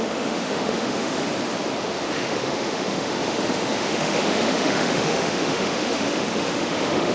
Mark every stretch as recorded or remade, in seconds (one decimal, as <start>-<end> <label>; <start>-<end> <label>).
0.0-1.3 remade; 1.3-1.8 recorded; 1.8-7.1 remade